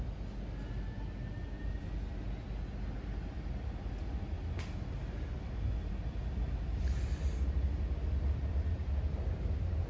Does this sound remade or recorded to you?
recorded